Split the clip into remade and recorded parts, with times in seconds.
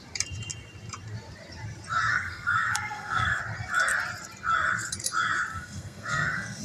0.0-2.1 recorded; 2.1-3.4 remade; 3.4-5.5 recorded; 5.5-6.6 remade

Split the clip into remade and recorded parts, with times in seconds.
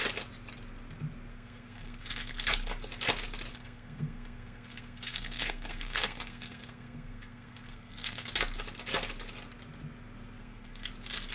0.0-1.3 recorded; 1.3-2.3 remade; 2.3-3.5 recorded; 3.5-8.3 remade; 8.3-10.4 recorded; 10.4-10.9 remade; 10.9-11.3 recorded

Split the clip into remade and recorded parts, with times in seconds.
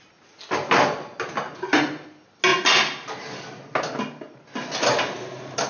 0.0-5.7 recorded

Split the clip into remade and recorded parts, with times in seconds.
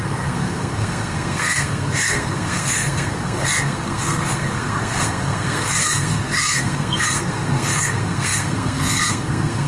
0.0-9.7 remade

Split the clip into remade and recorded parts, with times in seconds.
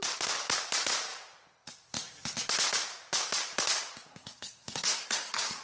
0.0-4.1 recorded; 4.1-5.6 remade